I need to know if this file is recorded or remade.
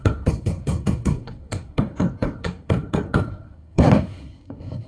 remade